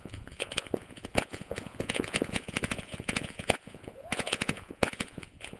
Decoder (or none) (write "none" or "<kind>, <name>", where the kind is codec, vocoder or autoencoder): vocoder, Vocos